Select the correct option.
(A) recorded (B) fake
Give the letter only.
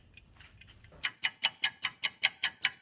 A